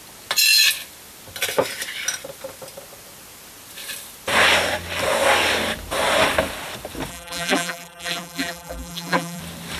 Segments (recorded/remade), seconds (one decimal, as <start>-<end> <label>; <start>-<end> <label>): 0.0-7.1 recorded; 7.1-9.4 remade; 9.4-9.8 recorded